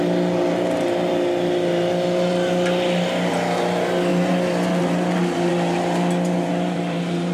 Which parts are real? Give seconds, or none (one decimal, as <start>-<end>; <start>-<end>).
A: 0.0-7.3